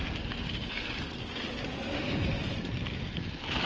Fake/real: real